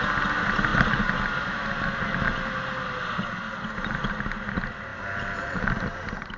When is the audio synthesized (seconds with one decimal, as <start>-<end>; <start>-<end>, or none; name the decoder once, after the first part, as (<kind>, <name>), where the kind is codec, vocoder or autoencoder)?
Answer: none